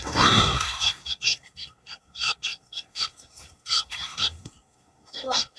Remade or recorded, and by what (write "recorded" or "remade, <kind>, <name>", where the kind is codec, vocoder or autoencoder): remade, codec, SNAC